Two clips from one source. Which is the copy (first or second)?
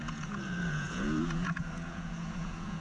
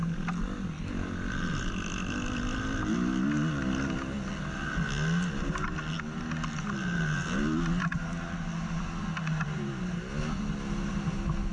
first